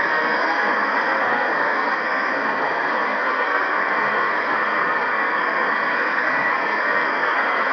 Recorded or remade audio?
remade